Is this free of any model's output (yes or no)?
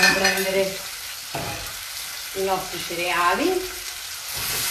yes